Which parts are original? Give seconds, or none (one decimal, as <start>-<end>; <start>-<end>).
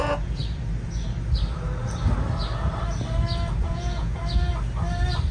0.4-3.6; 4.2-5.3